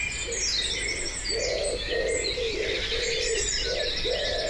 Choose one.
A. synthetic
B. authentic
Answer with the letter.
B